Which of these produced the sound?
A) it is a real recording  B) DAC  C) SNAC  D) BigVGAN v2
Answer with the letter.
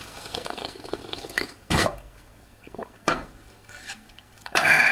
C